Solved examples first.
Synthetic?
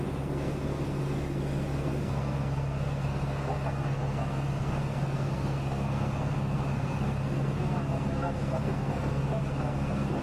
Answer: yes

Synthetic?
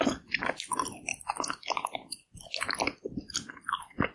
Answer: no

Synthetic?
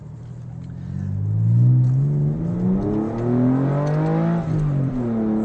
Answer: no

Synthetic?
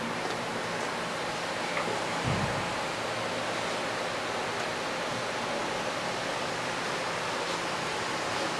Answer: no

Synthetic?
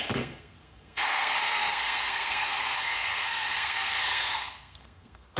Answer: yes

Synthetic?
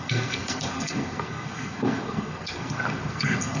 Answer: yes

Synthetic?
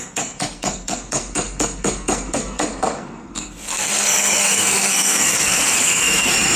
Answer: yes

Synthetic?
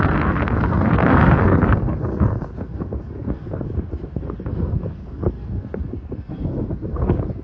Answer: yes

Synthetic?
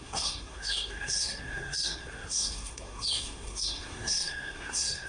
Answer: yes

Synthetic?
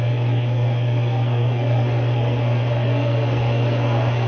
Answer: yes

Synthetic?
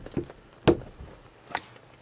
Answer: no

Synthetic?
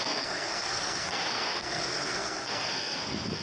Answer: yes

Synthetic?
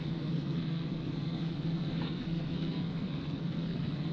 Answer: yes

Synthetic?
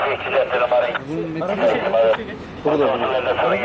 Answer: no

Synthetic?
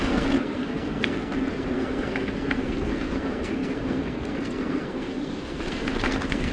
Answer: yes